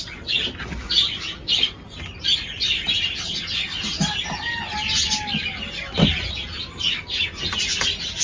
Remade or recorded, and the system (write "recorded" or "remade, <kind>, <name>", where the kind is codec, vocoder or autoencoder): recorded